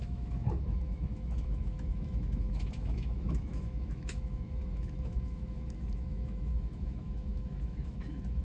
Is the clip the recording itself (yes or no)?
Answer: no